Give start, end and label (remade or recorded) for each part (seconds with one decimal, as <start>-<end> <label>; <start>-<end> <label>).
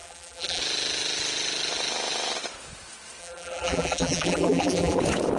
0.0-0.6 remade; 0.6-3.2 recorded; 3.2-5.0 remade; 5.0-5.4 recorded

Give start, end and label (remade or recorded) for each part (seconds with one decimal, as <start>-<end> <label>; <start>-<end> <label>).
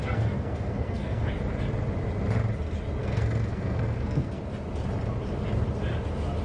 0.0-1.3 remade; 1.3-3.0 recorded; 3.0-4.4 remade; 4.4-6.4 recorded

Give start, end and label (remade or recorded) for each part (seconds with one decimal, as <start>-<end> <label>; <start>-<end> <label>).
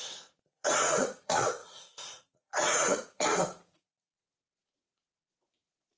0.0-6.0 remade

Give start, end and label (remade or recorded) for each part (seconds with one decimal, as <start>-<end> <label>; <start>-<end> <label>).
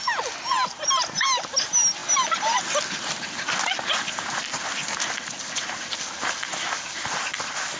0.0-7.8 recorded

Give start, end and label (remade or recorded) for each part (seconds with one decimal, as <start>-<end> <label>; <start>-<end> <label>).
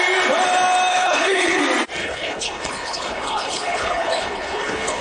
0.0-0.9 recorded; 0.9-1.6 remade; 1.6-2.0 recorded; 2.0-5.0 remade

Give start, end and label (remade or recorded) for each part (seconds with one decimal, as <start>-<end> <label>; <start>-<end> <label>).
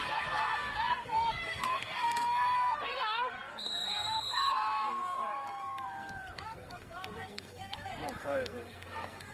0.0-9.3 remade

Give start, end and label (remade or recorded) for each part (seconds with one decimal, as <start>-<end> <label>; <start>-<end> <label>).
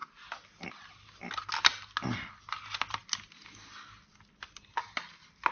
0.0-5.5 recorded